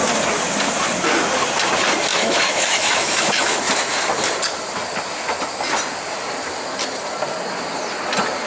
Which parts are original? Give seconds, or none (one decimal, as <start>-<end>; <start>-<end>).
0.0-2.1; 3.6-8.5